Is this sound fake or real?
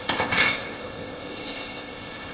fake